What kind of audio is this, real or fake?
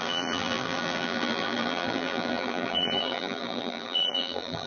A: fake